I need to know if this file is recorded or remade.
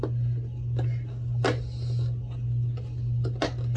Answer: recorded